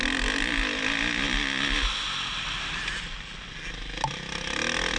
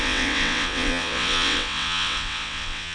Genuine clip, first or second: first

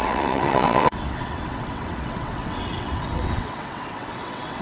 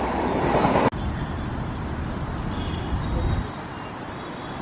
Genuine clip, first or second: second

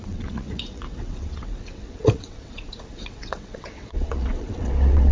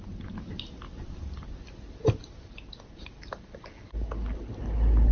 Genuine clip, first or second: second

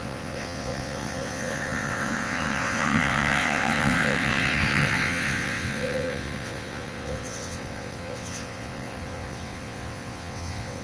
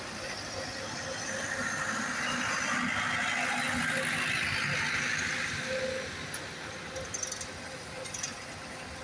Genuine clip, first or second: second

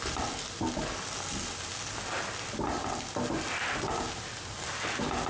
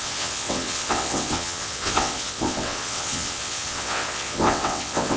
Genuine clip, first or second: first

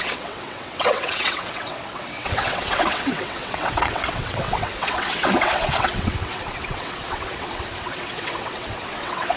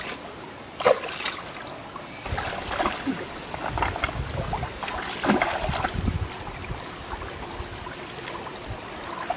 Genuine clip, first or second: second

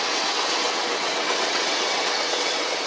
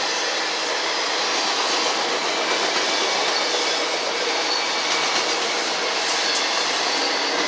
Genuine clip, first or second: second